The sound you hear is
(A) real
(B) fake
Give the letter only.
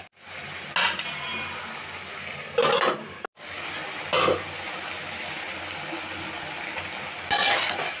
A